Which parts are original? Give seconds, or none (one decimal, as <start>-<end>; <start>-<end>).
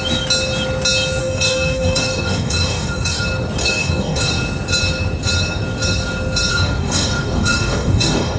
0.0-1.2; 3.2-3.6; 4.3-6.5